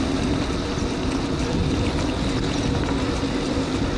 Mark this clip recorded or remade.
recorded